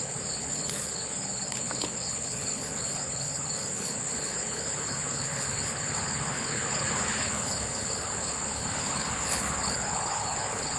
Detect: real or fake fake